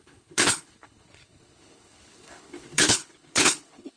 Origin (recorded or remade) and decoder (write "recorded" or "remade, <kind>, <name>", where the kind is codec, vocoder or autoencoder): remade, codec, HILCodec